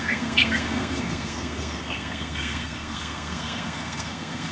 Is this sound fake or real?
fake